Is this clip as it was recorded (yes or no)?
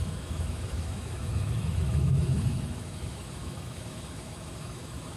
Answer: no